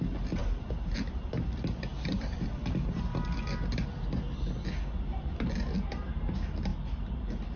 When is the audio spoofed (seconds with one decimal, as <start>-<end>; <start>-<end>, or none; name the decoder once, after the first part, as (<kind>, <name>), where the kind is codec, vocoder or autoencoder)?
none